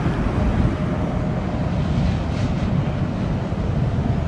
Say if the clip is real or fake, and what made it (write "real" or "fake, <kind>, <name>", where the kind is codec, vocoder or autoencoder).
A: real